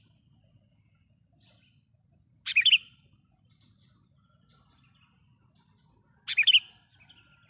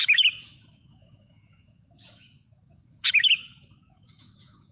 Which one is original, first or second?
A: first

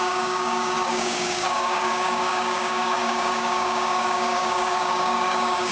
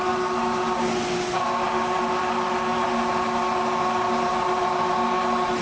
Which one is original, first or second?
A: second